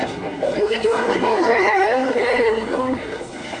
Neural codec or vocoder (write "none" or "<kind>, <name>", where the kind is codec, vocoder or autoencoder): codec, SNAC